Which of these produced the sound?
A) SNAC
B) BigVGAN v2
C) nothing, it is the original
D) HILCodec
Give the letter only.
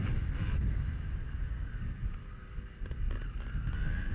C